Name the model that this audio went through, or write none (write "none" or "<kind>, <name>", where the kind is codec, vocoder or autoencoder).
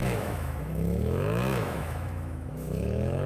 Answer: autoencoder, DAC-VAE